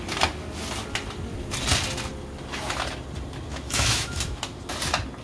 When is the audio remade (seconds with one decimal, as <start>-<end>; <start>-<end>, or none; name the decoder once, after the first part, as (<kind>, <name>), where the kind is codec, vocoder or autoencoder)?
3.5-4.4 (autoencoder, DAC-VAE)